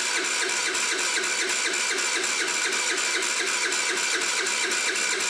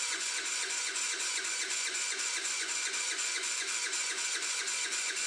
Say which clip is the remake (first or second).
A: second